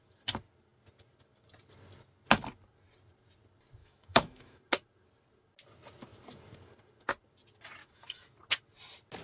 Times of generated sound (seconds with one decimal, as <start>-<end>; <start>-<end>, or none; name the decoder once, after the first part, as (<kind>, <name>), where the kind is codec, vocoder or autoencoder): 3.8-4.6 (autoencoder, DAC-VAE); 7.8-8.3